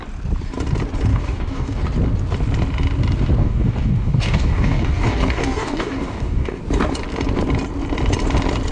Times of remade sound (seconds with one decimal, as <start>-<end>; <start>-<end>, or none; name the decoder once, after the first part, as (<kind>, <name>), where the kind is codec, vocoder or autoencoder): 1.1-1.8 (codec, DAC); 3.4-6.6